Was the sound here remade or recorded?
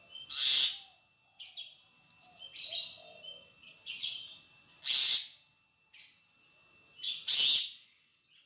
recorded